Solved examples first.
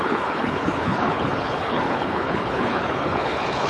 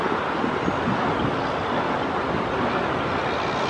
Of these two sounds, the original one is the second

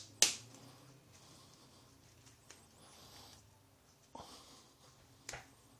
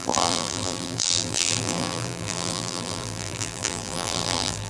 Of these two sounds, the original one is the first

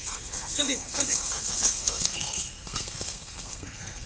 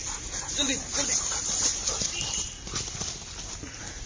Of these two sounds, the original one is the second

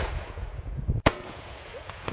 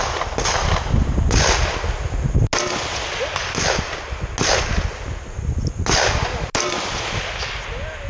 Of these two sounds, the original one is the second